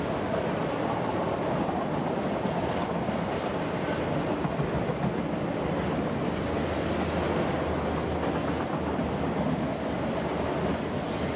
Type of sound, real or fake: real